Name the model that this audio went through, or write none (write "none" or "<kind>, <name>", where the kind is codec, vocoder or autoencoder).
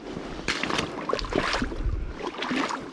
none